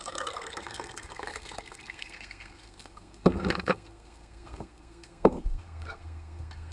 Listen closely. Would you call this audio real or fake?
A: fake